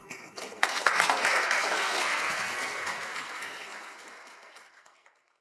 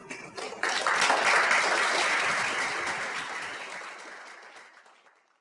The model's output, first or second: first